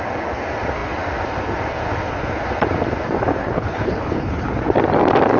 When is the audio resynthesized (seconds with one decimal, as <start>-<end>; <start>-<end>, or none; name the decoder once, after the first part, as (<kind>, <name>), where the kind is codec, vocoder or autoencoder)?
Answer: 3.4-4.6 (codec, HILCodec)